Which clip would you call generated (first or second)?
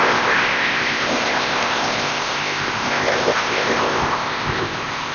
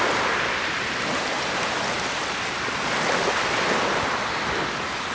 first